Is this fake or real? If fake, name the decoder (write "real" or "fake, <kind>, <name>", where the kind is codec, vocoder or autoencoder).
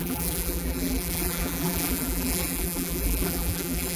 fake, vocoder, BigVGAN v2